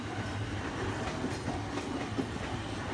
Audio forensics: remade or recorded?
recorded